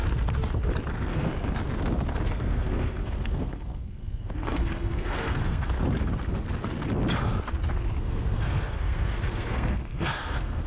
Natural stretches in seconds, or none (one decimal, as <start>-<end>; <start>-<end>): 0.0-0.9; 1.3-2.3; 5.8-8.0